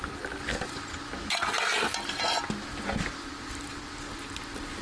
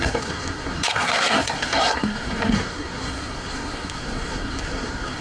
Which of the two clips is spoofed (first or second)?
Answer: second